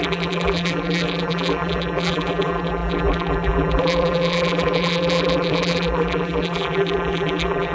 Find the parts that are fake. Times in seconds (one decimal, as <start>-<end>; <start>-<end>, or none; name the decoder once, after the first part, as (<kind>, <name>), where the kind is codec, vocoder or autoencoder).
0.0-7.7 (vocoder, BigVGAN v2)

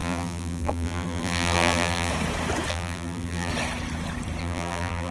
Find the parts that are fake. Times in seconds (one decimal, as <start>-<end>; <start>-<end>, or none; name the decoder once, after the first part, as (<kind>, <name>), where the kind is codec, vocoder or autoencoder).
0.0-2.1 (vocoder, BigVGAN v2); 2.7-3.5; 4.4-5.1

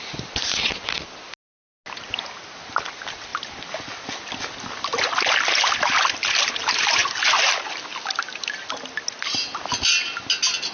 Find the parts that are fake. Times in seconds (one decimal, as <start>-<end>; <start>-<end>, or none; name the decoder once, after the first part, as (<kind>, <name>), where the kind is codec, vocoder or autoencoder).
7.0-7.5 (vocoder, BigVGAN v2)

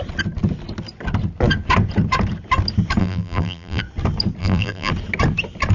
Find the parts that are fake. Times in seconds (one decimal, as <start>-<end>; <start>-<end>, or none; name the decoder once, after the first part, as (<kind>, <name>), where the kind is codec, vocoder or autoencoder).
3.0-3.8 (vocoder, BigVGAN v2); 4.4-4.9